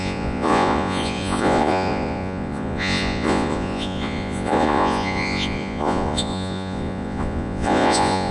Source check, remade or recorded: remade